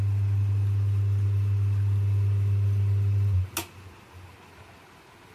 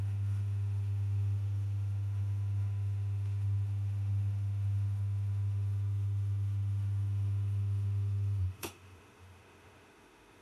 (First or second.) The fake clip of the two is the second